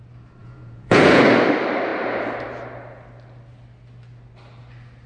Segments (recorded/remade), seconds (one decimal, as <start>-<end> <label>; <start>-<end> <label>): 0.0-0.4 recorded; 0.4-1.2 remade; 1.2-5.1 recorded